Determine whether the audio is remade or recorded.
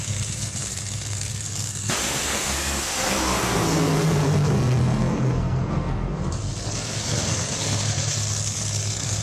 remade